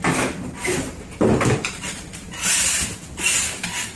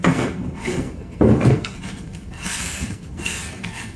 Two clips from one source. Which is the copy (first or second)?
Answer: second